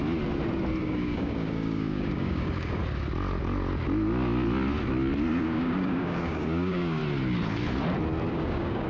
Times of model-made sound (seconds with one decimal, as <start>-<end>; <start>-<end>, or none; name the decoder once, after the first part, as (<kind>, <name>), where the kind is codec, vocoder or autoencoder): 0.8-2.8 (codec, DAC); 5.4-7.0; 8.3-8.9